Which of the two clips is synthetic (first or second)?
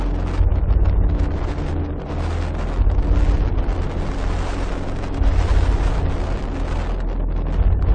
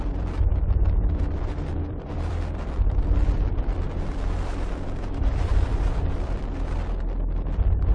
second